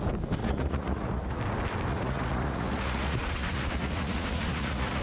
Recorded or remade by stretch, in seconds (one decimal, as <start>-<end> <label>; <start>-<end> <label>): 0.0-0.4 recorded; 0.4-1.4 remade; 1.4-1.9 recorded; 1.9-5.0 remade